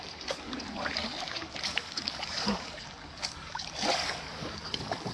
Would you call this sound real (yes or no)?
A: no